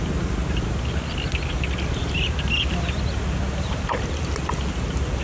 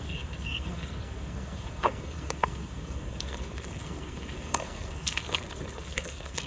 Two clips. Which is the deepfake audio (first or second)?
second